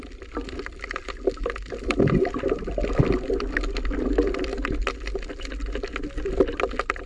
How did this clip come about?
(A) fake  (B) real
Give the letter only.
B